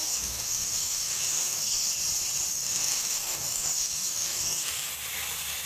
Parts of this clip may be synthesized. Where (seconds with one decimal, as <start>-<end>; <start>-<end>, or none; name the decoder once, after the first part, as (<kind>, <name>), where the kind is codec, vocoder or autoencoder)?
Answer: 0.0-1.9 (codec, DAC); 2.5-4.9